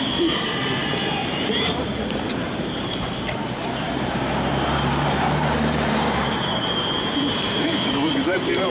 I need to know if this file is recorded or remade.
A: remade